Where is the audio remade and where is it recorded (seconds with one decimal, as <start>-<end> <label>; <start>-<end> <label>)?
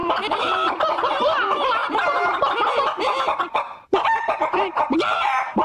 0.0-1.8 remade; 1.8-4.2 recorded; 4.2-5.6 remade